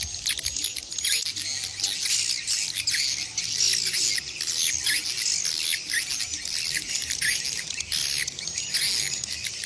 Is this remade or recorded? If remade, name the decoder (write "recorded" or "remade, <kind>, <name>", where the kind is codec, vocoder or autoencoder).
recorded